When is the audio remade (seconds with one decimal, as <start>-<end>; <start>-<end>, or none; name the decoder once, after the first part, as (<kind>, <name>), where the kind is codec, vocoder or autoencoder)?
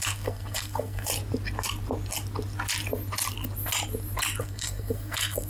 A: 0.0-1.1 (codec, SNAC); 4.4-5.5